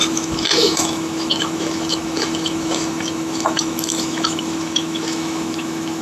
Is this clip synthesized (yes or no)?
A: yes